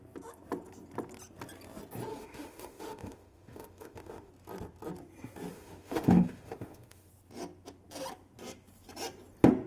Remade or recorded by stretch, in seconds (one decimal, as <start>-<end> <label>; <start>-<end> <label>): 0.0-2.1 recorded; 2.1-4.3 remade; 4.3-5.5 recorded; 5.5-7.1 remade; 7.1-9.7 recorded